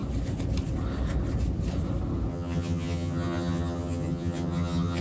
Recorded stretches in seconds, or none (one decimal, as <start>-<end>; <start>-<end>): 0.0-2.3